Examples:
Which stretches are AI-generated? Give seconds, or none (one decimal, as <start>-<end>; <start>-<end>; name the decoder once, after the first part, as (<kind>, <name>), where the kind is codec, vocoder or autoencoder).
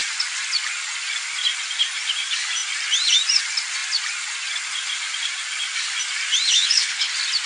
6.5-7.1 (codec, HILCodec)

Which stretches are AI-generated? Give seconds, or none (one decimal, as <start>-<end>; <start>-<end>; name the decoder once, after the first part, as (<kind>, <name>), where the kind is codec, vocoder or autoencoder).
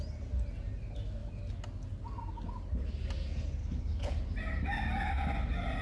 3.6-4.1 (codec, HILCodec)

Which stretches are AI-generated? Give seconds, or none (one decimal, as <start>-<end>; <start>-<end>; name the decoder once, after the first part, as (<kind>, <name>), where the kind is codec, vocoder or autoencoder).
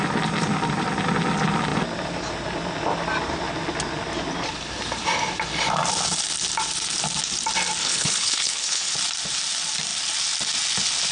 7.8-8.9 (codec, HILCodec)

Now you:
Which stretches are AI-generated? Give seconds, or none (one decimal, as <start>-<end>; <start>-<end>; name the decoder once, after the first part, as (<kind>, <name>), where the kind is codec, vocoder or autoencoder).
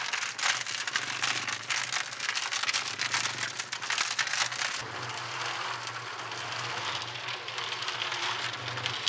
none